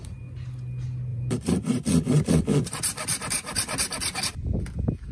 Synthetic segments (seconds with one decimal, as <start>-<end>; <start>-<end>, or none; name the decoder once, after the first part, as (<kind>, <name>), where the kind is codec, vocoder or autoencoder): 1.1-4.2 (vocoder, BigVGAN v2)